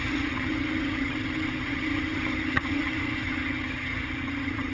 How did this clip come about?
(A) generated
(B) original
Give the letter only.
A